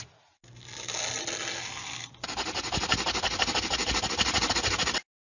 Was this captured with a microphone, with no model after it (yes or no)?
yes